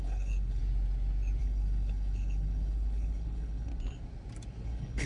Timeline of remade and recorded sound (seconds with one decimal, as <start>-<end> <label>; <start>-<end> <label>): 0.0-0.6 remade; 0.6-1.4 recorded; 1.4-3.7 remade; 3.7-4.6 recorded; 4.6-5.1 remade